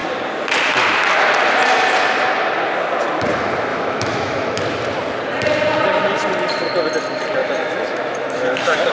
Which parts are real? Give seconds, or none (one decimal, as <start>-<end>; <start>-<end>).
0.0-3.7; 4.6-7.4